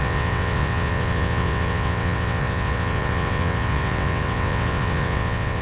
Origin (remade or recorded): remade